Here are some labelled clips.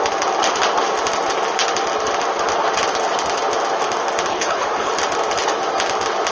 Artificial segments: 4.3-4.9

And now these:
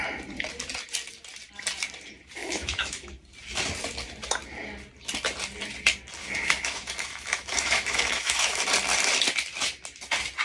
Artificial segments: 2.4-3.1; 6.2-8.6